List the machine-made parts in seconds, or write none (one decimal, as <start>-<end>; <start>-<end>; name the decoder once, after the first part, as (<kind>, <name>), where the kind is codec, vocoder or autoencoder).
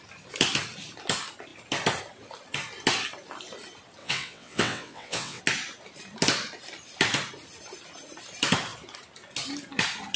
4.0-5.4 (vocoder, WaveNeXt)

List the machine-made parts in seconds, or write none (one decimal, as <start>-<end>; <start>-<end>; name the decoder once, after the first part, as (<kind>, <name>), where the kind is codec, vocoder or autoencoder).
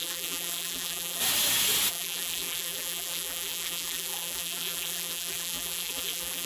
0.0-1.2 (vocoder, BigVGAN v2); 1.9-6.5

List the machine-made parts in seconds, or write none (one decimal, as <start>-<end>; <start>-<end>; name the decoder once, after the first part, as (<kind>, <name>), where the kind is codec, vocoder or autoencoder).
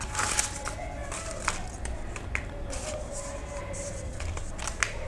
none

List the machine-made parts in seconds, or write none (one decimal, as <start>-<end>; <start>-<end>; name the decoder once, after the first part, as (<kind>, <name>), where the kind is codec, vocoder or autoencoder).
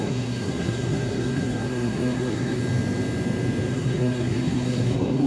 0.0-2.6 (codec, SNAC); 3.7-5.3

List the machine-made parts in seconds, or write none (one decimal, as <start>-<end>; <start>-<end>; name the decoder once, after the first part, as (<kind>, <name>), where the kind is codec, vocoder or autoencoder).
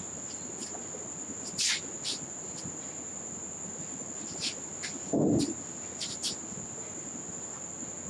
none